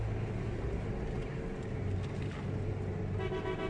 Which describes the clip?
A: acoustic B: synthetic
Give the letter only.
A